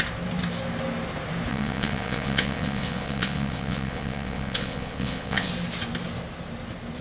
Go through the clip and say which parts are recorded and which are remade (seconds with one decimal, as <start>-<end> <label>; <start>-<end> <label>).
0.0-1.5 recorded; 1.5-5.5 remade; 5.5-7.0 recorded